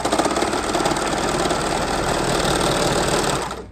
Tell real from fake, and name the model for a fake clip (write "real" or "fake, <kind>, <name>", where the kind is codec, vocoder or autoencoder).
real